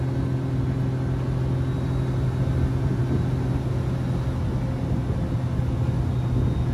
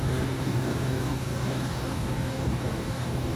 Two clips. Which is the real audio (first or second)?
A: first